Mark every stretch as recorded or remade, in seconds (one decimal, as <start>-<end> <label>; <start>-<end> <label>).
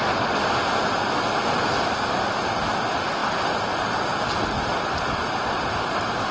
0.0-4.7 recorded; 4.7-6.3 remade